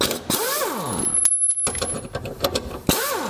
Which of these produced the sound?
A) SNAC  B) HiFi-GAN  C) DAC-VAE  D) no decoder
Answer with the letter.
D